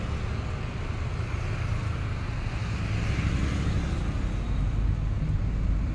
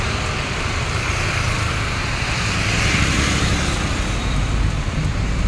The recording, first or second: first